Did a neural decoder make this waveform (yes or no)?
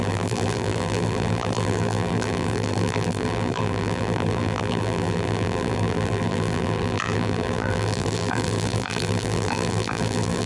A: yes